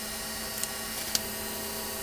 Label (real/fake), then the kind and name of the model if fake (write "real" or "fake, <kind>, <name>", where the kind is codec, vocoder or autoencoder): real